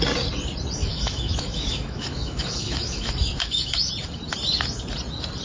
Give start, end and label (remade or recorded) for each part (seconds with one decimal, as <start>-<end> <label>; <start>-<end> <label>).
0.0-0.8 recorded; 0.8-3.9 remade; 3.9-5.4 recorded